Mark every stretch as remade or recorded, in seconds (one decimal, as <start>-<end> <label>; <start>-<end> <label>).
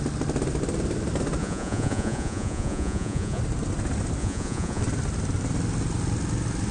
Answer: 0.0-1.4 recorded; 1.4-3.4 remade; 3.4-4.2 recorded; 4.2-4.8 remade; 4.8-6.7 recorded